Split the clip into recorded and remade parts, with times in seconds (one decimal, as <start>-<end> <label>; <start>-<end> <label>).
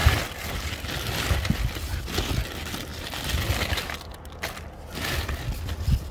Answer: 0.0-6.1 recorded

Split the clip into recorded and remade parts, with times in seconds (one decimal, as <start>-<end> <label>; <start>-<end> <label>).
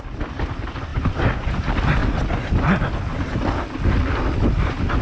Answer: 0.0-5.0 recorded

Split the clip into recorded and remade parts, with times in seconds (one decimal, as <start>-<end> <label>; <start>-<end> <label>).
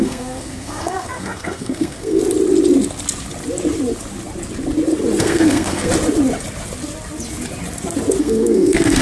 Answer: 0.0-2.2 remade; 2.2-5.2 recorded; 5.2-5.9 remade; 5.9-8.2 recorded; 8.2-9.0 remade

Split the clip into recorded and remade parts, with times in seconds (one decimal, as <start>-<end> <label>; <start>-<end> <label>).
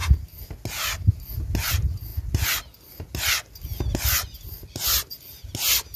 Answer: 0.0-6.0 recorded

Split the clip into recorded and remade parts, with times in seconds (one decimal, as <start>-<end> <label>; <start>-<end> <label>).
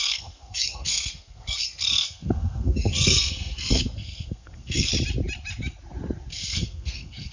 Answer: 0.0-4.9 remade; 4.9-6.3 recorded; 6.3-7.3 remade